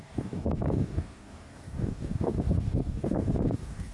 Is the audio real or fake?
fake